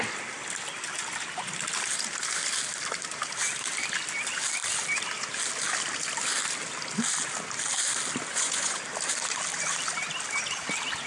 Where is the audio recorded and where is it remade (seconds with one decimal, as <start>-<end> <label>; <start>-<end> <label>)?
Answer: 0.0-8.3 recorded; 8.3-8.8 remade; 8.8-11.1 recorded